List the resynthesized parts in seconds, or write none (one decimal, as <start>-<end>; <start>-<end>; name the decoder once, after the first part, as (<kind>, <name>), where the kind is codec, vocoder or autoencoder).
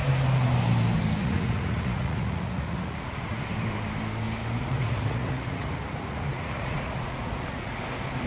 1.2-3.4 (vocoder, Vocos); 4.6-7.8